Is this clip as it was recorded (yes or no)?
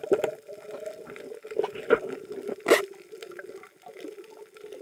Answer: yes